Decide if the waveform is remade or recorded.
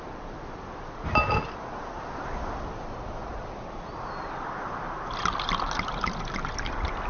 recorded